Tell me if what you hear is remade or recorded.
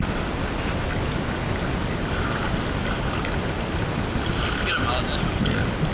recorded